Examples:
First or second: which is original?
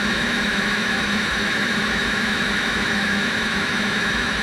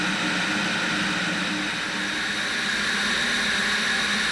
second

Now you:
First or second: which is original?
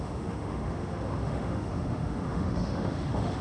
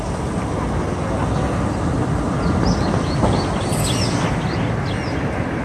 second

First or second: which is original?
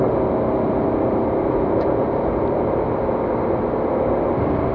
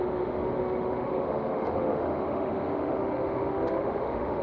first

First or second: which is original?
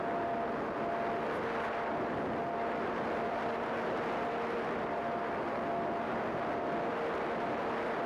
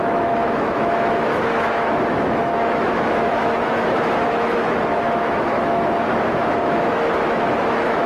first